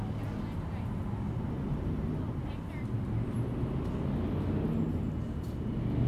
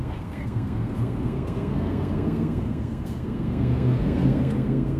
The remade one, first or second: second